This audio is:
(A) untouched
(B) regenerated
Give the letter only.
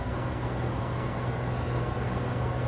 B